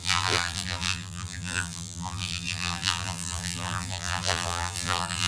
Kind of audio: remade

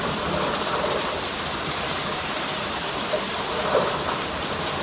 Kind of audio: remade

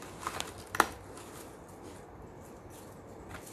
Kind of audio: recorded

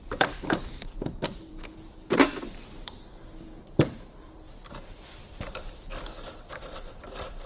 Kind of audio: remade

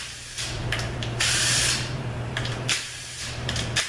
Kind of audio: remade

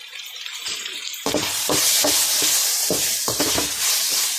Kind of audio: remade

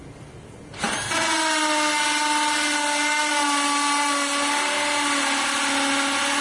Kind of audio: recorded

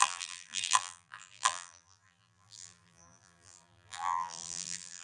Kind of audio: remade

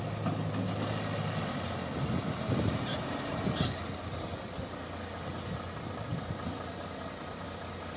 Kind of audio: recorded